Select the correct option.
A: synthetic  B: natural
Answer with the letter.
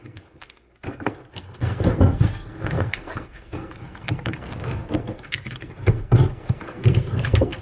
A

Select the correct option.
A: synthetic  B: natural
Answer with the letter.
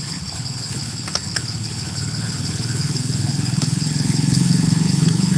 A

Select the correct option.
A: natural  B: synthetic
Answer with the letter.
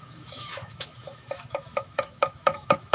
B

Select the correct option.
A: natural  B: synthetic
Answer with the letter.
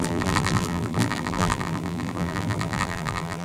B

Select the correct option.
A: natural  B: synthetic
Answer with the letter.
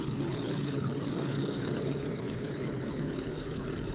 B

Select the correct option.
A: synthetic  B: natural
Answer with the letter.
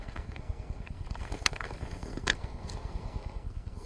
A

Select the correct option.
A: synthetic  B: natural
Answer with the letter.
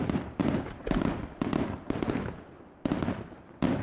B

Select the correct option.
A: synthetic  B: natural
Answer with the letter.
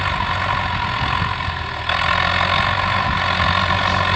B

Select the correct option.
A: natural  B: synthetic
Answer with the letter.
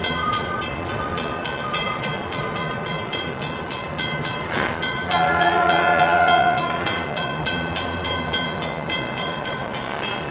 B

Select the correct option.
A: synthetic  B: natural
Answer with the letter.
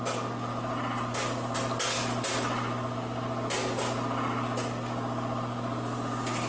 B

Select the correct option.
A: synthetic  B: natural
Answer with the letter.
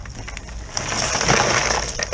B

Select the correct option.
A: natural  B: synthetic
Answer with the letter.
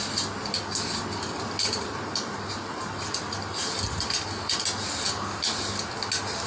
A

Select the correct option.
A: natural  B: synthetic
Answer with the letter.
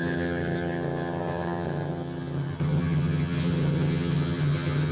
B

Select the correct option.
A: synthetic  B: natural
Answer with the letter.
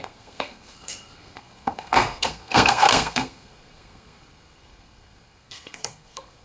A